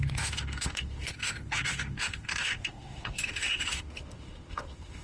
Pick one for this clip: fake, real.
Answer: fake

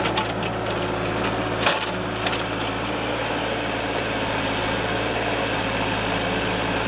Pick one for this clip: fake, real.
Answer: real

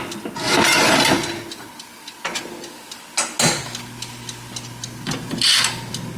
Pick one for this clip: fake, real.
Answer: real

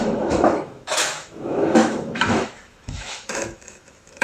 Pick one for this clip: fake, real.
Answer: fake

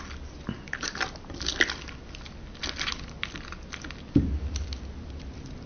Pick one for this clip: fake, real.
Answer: real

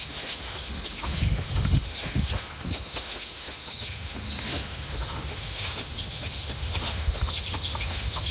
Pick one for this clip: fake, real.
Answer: fake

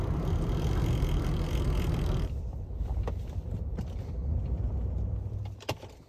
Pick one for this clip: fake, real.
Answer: real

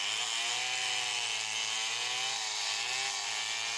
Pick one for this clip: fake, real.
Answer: real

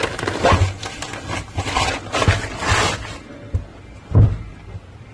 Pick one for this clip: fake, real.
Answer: real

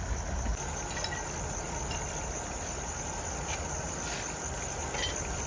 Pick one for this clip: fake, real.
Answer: real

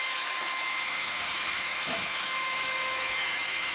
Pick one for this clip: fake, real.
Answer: fake